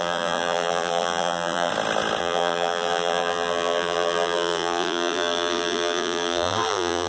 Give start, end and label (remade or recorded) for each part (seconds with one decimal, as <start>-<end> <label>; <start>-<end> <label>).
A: 0.0-1.7 remade; 1.7-2.2 recorded; 2.2-7.1 remade